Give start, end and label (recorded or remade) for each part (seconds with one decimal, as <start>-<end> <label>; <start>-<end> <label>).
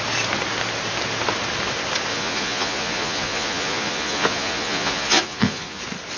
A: 0.0-2.1 recorded; 2.1-5.8 remade; 5.8-6.2 recorded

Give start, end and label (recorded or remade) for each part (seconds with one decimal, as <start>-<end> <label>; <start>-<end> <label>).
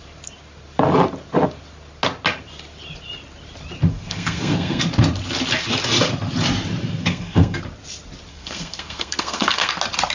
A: 0.0-3.9 recorded; 3.9-4.8 remade; 4.8-7.0 recorded; 7.0-7.6 remade; 7.6-8.3 recorded; 8.3-9.7 remade; 9.7-10.1 recorded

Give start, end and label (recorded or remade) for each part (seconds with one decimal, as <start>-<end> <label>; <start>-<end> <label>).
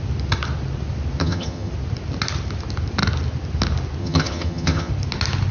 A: 0.0-1.2 recorded; 1.2-1.7 remade; 1.7-4.0 recorded; 4.0-4.9 remade; 4.9-5.5 recorded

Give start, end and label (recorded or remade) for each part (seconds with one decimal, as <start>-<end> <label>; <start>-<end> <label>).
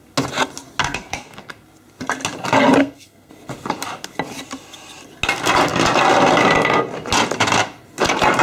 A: 0.0-0.8 recorded; 0.8-1.4 remade; 1.4-2.8 recorded; 2.8-3.3 remade; 3.3-8.4 recorded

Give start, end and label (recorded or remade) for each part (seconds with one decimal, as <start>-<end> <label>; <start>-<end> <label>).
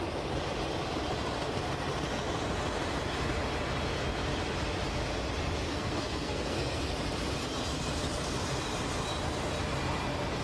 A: 0.0-5.7 recorded; 5.7-6.8 remade; 6.8-10.4 recorded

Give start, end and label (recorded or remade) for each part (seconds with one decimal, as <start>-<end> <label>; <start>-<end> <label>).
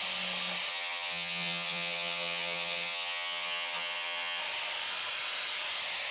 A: 0.0-0.7 recorded; 0.7-4.4 remade; 4.4-6.1 recorded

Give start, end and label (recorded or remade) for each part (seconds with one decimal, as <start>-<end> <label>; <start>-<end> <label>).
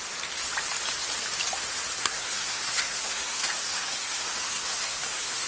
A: 0.0-2.0 recorded; 2.0-5.5 remade